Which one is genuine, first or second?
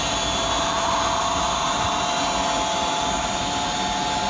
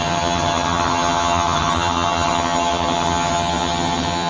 first